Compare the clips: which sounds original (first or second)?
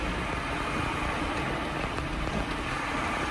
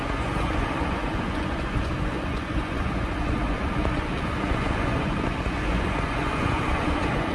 first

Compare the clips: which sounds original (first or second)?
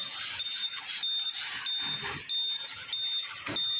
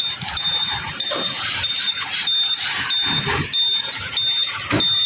first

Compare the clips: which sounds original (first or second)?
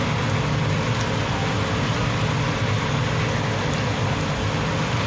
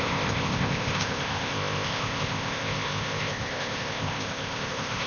first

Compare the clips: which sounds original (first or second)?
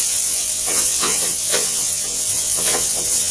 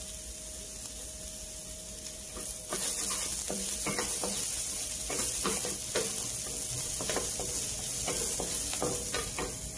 second